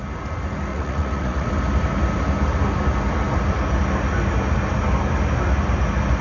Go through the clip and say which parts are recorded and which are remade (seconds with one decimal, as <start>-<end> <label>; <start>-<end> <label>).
0.0-0.7 recorded; 0.7-1.5 remade; 1.5-6.2 recorded